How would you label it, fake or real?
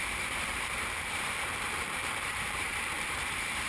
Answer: fake